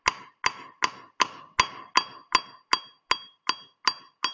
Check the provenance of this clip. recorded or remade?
recorded